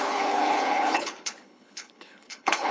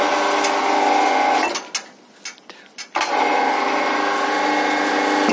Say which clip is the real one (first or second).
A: second